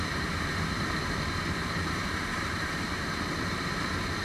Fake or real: fake